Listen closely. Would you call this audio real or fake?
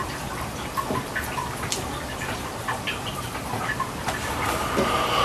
fake